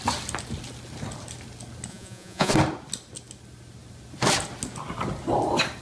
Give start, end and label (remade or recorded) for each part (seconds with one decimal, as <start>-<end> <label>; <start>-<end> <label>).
0.0-1.9 recorded; 1.9-2.5 remade; 2.5-5.8 recorded